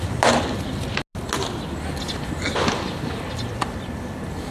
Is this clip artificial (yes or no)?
no